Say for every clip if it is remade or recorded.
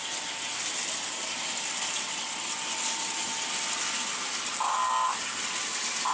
recorded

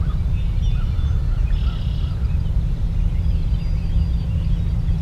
recorded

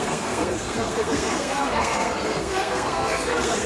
remade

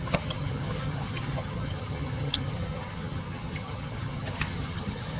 remade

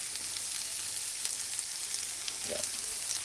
recorded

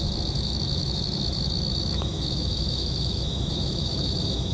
remade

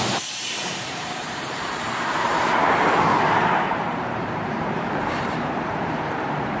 remade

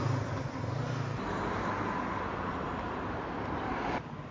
remade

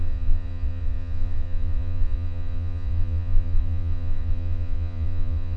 remade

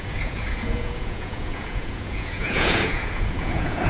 remade